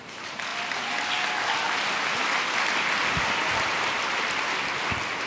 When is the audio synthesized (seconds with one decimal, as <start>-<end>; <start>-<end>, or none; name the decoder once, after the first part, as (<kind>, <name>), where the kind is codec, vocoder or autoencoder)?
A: none